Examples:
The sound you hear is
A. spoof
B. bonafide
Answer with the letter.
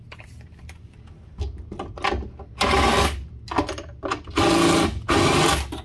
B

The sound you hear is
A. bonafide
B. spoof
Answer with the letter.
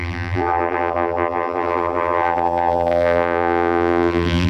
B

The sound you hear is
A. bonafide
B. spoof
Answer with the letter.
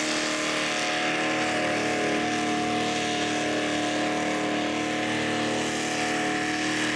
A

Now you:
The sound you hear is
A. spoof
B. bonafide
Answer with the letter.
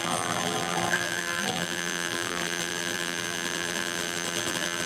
A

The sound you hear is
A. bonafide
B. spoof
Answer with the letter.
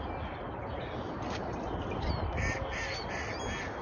A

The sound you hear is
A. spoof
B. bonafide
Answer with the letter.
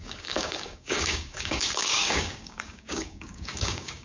A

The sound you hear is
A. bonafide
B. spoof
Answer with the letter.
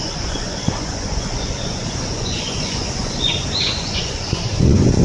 B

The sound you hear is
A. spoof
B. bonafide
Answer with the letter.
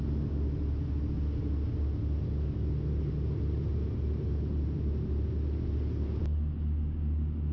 B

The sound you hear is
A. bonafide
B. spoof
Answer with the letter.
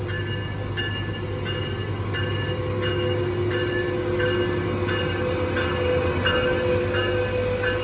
A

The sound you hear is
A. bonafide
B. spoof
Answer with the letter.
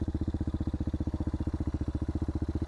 A